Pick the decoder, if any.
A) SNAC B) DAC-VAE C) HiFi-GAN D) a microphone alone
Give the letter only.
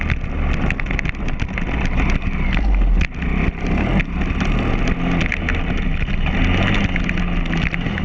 D